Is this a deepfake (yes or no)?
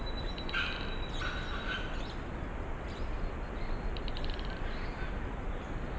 no